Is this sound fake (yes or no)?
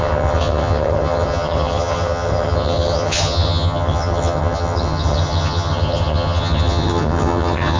yes